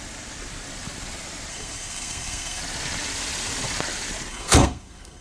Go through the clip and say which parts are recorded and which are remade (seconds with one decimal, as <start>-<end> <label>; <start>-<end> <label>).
0.0-1.5 recorded; 1.5-2.6 remade; 2.6-4.3 recorded; 4.3-5.2 remade